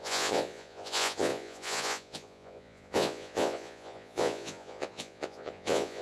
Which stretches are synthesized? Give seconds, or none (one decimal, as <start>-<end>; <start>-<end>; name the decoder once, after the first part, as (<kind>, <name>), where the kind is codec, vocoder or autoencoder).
0.0-6.0 (vocoder, Vocos)